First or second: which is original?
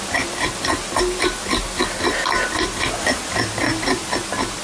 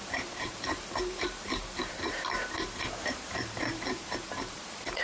first